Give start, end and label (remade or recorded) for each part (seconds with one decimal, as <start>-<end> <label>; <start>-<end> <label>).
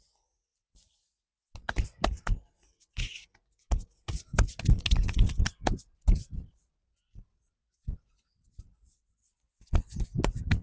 0.0-10.6 recorded